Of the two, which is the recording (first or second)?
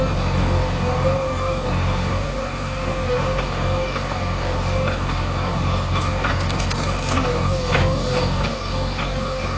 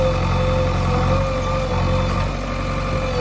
second